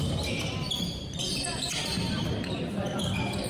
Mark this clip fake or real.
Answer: real